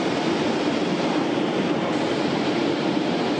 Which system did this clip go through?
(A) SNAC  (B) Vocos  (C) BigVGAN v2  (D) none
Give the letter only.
C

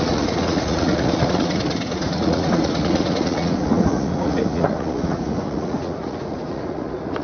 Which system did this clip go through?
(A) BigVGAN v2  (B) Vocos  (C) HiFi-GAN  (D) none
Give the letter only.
B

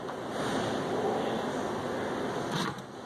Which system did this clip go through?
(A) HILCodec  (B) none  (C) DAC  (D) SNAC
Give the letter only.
B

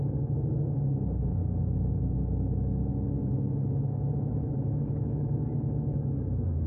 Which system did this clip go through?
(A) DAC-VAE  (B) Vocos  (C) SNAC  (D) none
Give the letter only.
A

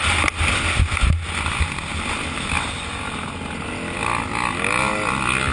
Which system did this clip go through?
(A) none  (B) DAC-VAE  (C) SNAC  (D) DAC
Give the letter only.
A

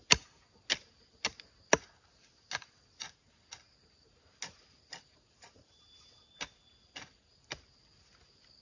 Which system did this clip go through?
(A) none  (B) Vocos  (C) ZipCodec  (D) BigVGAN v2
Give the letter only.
A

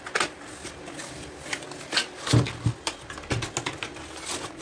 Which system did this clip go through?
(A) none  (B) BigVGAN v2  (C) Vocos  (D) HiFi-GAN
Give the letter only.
A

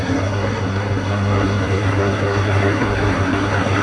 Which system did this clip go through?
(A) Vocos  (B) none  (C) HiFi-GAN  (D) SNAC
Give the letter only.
D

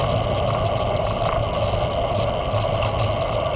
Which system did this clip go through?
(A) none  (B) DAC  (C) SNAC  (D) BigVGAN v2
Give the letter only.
A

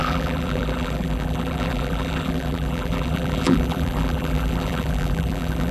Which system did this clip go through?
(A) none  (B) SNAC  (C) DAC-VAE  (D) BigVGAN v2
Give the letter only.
D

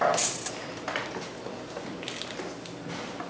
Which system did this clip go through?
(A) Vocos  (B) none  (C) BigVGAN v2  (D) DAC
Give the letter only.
B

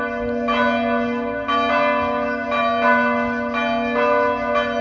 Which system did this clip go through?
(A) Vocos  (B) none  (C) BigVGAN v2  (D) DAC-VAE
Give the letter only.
B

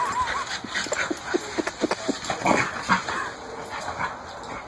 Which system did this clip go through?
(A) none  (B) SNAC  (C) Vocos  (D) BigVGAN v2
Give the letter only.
A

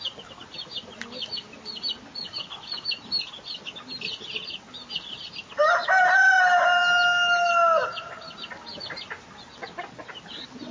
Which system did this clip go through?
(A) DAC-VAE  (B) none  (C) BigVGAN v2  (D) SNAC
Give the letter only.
B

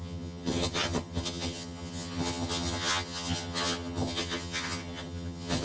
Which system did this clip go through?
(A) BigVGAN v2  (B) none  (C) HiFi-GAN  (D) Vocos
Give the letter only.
C